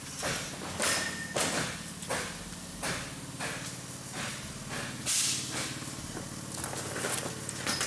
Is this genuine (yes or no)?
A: yes